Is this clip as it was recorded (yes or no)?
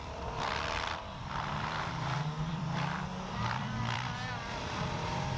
no